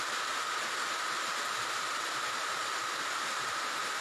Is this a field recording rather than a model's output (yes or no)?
yes